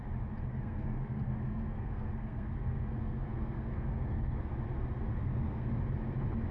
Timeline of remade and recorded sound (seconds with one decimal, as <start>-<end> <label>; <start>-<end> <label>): 0.0-0.5 recorded; 0.5-4.4 remade; 4.4-5.1 recorded; 5.1-5.7 remade; 5.7-6.5 recorded